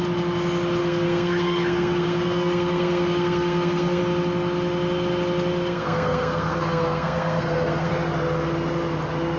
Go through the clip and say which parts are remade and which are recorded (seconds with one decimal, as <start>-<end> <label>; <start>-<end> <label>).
0.0-0.8 recorded; 0.8-4.0 remade; 4.0-5.6 recorded; 5.6-7.9 remade; 7.9-9.4 recorded